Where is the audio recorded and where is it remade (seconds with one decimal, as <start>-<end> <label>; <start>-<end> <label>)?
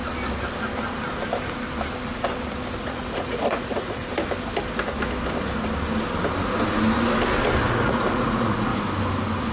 0.0-2.8 recorded; 2.8-4.0 remade; 4.0-7.6 recorded; 7.6-8.7 remade; 8.7-9.5 recorded